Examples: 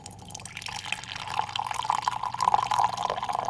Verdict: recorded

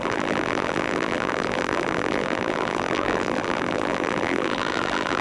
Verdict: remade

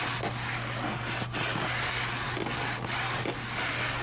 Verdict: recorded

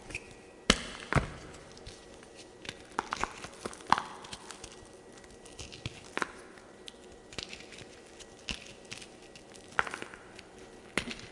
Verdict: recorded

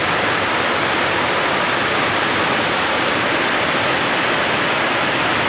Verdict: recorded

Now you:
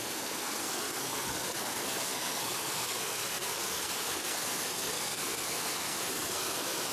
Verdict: remade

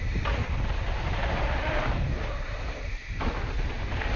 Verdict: recorded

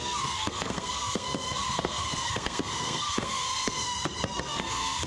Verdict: remade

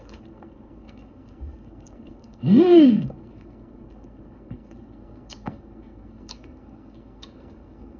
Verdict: remade